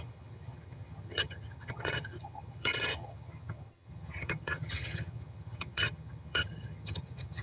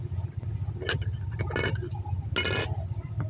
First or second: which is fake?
first